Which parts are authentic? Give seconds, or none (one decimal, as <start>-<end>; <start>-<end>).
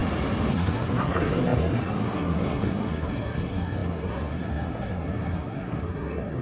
0.0-0.5